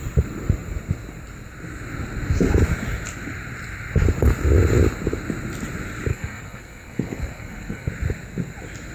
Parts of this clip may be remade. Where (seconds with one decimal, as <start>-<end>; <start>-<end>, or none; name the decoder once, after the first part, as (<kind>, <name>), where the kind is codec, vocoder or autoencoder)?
6.1-7.9 (codec, SNAC)